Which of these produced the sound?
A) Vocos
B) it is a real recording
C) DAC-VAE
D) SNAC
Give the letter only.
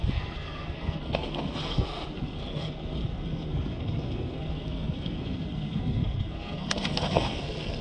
D